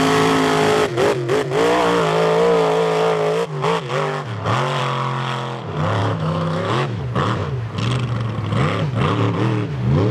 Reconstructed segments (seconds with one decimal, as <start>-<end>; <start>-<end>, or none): 6.0-7.0